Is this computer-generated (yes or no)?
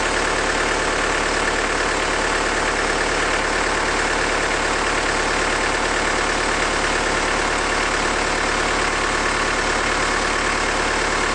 no